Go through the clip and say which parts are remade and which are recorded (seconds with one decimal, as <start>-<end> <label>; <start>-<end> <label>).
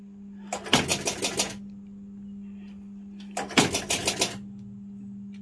0.0-5.4 recorded